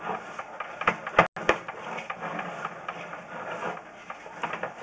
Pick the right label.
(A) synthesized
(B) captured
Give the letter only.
B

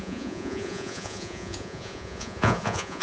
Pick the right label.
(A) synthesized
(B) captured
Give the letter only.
A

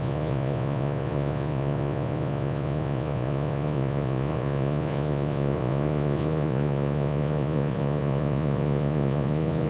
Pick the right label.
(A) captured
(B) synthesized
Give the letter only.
B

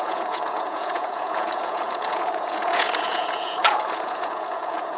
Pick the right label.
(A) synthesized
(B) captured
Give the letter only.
A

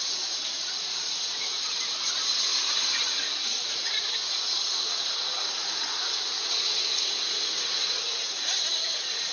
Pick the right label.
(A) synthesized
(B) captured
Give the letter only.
A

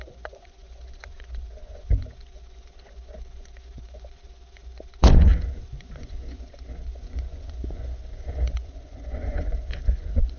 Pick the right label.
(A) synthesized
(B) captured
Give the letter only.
A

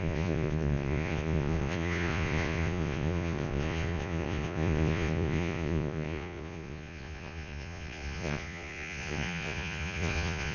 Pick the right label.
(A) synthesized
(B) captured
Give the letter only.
A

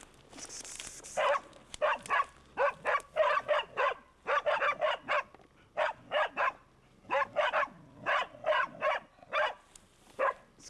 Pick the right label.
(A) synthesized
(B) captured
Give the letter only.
B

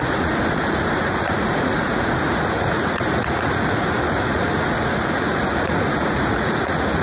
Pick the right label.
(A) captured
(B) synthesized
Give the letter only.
B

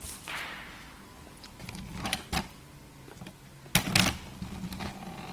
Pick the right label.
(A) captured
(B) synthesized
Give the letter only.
A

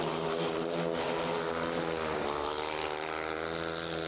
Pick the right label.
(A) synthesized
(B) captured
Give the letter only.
B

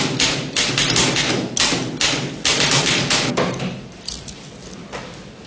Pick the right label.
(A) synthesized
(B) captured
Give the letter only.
B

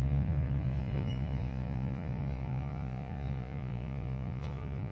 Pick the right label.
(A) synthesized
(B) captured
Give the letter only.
A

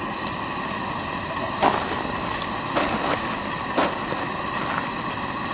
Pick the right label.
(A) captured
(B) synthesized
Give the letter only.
A